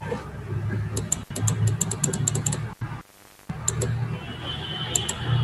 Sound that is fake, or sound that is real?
real